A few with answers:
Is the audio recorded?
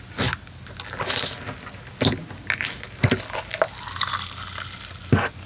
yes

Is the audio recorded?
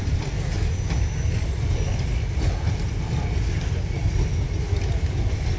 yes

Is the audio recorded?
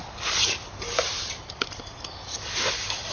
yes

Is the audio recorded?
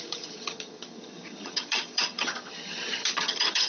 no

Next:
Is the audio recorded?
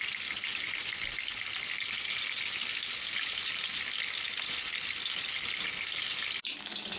yes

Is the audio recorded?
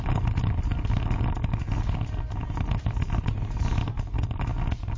yes